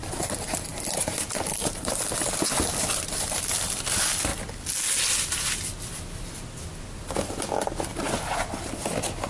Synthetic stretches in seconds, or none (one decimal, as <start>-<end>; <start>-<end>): none